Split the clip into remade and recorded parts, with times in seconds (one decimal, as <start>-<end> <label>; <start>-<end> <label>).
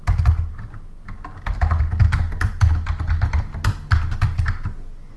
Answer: 0.0-5.2 recorded